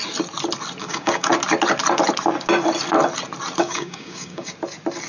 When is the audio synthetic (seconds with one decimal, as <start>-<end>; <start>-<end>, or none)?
0.8-1.3; 3.6-4.5